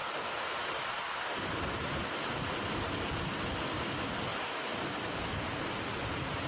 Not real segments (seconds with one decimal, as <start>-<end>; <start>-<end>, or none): none